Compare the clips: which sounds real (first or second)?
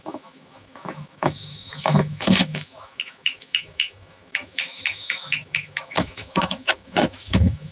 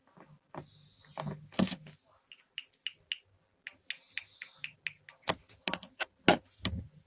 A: second